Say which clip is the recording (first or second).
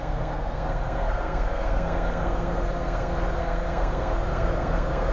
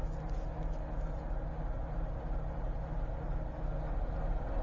second